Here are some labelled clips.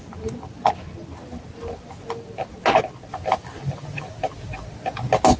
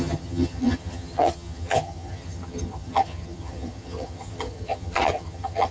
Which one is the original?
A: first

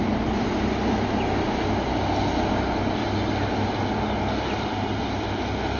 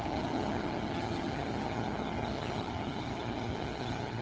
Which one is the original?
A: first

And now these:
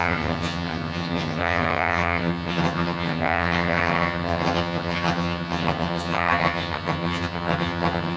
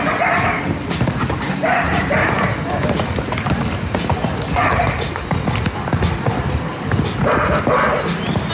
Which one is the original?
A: second